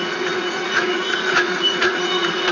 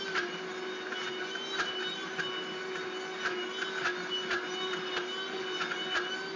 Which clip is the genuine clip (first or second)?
second